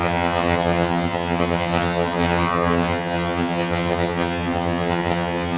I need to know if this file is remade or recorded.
remade